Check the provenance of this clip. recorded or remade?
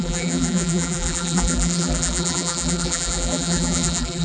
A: remade